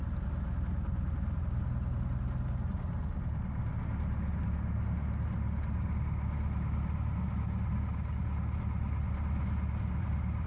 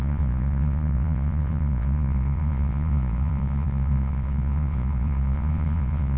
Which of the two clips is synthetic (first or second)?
second